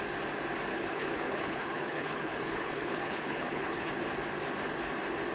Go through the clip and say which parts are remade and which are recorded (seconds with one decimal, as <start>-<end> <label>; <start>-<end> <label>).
0.0-0.7 recorded; 0.7-3.9 remade; 3.9-5.3 recorded

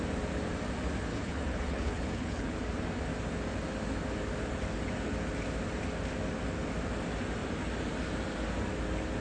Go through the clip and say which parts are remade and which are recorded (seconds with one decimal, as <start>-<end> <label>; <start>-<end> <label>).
0.0-1.1 recorded; 1.1-2.6 remade; 2.6-9.2 recorded

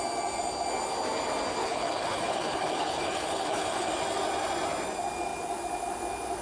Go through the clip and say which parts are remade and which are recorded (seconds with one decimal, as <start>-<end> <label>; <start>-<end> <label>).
0.0-1.6 recorded; 1.6-3.9 remade; 3.9-6.4 recorded

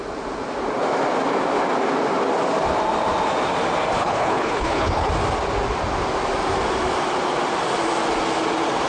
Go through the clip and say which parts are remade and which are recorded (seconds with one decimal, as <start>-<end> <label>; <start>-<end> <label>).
0.0-4.0 recorded; 4.0-5.1 remade; 5.1-8.9 recorded

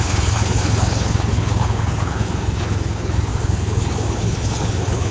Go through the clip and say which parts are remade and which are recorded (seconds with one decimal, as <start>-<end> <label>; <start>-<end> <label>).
0.0-5.1 remade